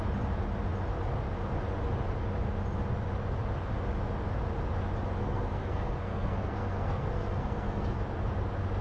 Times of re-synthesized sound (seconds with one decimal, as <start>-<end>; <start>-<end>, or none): 5.2-8.0